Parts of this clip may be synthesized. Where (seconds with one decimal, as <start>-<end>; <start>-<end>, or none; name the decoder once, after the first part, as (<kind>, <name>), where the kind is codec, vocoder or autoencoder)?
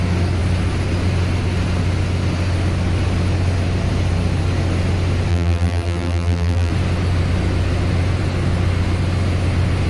5.3-6.7 (vocoder, BigVGAN v2)